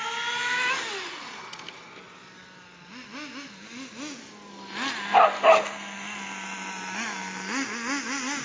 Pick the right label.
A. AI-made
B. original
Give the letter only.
B